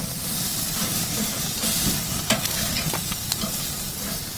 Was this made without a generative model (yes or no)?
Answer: no